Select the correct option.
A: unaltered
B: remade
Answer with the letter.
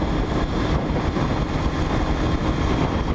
A